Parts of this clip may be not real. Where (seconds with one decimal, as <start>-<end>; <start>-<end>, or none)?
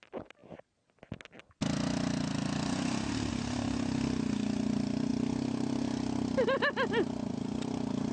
none